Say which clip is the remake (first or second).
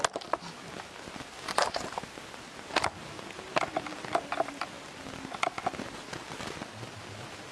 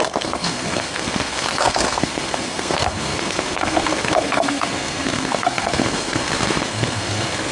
second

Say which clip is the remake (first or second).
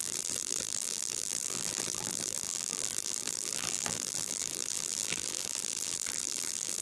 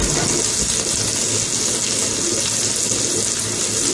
first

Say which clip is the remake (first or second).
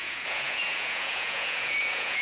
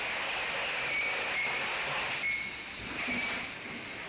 first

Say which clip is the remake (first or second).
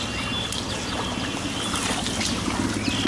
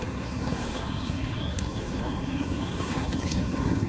second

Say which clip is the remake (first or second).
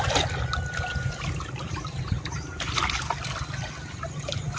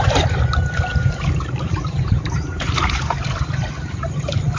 second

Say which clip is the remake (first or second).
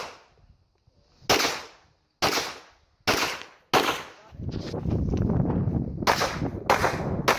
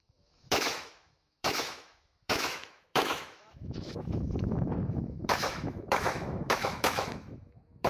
second